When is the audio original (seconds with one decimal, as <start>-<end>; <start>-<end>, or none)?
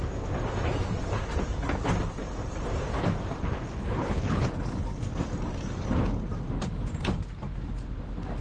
0.0-3.8; 4.5-8.4